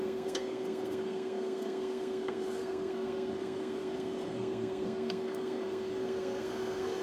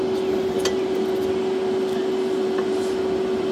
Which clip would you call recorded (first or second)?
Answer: second